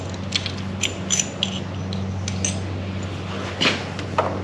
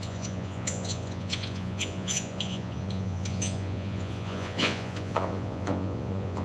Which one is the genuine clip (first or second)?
first